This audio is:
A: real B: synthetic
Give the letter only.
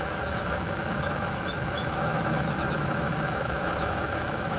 B